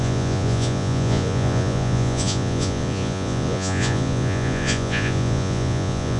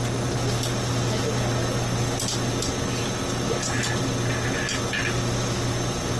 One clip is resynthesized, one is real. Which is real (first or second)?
second